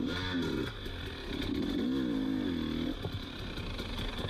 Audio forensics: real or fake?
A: real